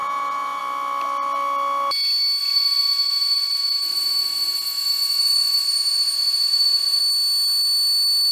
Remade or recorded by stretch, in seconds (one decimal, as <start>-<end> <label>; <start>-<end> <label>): 0.0-0.6 remade; 0.6-2.4 recorded; 2.4-7.0 remade; 7.0-8.3 recorded